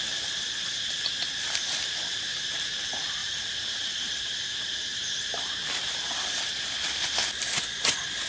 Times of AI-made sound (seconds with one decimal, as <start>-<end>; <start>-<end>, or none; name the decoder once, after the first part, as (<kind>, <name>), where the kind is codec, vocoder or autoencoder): 3.2-4.4 (vocoder, BigVGAN v2); 4.9-6.7